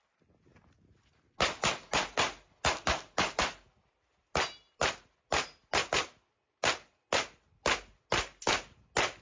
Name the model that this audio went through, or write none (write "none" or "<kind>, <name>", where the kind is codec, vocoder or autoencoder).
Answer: none